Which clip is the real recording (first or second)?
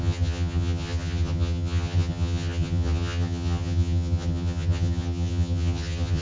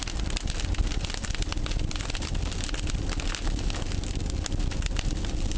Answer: second